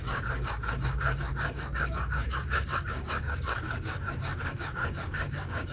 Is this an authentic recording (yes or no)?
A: no